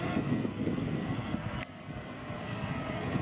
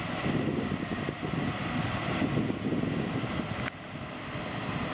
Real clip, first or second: second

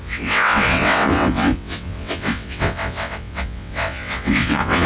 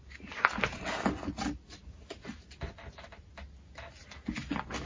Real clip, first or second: second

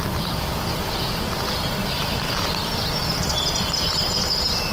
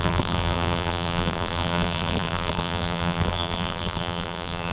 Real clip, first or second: first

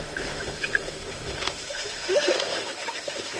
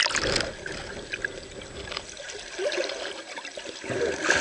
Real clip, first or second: second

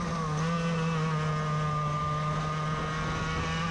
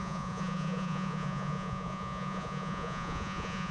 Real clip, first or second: first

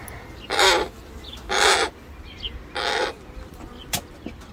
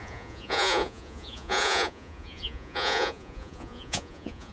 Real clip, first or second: first